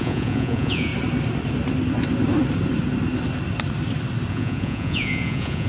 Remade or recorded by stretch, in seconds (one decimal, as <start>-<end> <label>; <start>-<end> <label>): 0.0-0.9 remade; 0.9-4.3 recorded; 4.3-5.7 remade